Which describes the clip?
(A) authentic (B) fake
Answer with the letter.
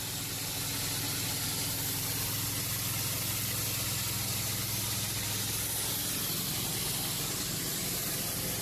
A